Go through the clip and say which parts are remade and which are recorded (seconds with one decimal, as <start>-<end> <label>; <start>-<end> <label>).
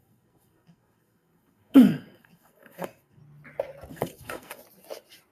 0.0-3.2 remade; 3.2-3.9 recorded; 3.9-4.6 remade; 4.6-5.3 recorded